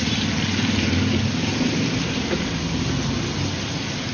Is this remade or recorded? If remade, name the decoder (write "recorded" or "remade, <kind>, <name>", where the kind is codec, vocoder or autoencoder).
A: recorded